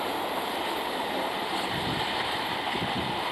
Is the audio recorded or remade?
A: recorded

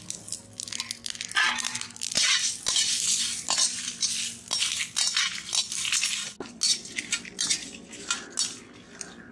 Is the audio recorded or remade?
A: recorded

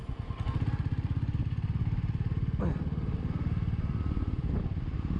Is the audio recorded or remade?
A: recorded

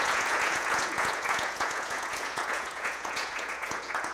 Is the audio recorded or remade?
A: remade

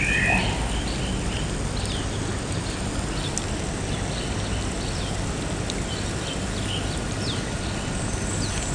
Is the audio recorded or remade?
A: recorded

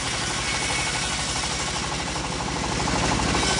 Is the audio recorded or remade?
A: recorded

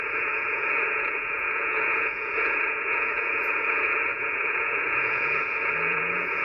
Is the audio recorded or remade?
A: remade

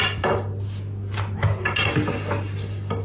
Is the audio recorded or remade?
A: recorded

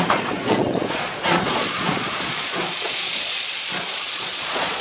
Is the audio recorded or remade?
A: remade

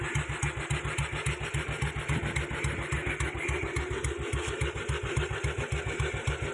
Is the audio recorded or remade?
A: recorded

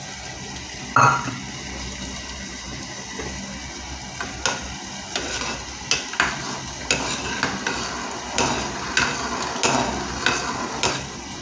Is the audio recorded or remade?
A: recorded